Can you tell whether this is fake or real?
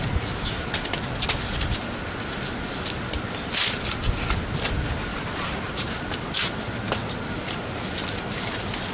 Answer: real